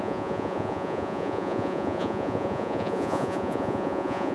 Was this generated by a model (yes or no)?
yes